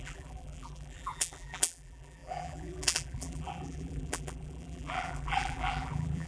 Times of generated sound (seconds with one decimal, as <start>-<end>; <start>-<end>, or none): 0.0-6.3